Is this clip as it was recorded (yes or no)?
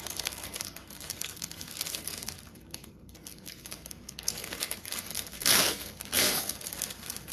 no